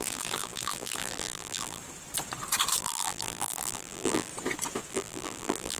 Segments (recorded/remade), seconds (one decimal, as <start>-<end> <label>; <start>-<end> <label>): 0.0-1.8 remade; 1.8-2.8 recorded; 2.8-4.3 remade; 4.3-4.9 recorded; 4.9-5.8 remade